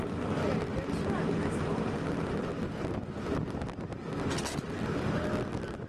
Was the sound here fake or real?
real